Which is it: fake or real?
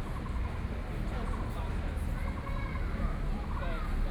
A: real